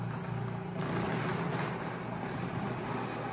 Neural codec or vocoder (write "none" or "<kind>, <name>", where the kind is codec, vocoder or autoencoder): none